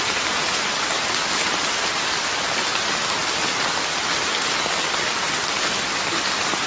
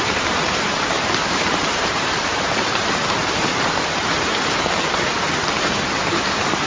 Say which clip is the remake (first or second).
second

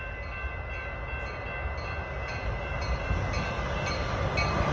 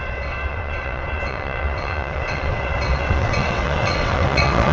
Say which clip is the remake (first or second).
second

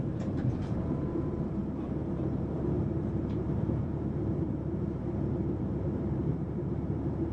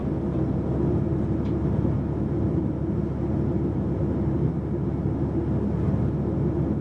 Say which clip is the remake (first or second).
first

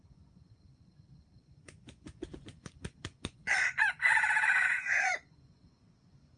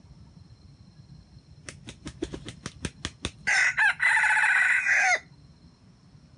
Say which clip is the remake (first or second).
first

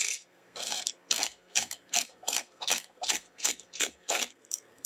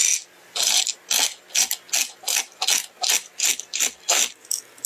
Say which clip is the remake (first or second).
first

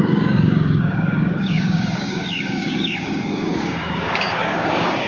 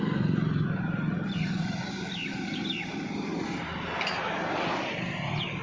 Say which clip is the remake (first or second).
first